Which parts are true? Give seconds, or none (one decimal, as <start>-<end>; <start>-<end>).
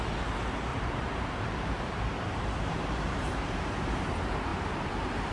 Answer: 0.0-0.7; 3.9-4.5